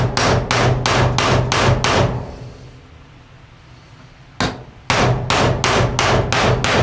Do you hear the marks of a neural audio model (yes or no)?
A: no